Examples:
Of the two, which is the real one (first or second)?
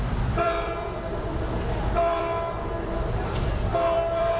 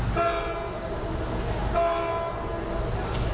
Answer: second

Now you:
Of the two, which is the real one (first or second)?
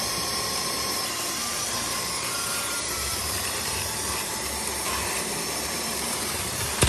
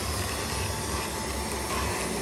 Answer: second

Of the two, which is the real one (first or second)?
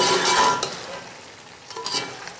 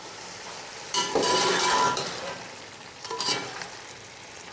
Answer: first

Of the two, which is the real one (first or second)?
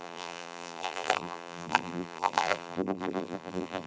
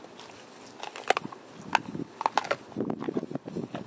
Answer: second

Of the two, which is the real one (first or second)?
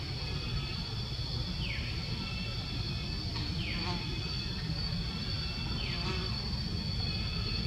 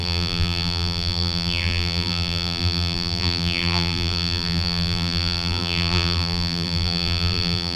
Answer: first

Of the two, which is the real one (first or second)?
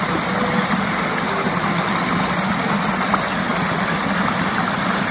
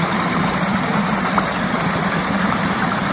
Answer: first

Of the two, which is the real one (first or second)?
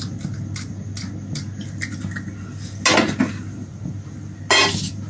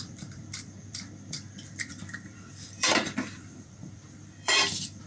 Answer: first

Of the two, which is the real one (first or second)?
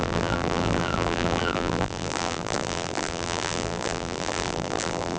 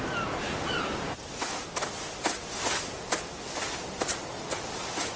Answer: second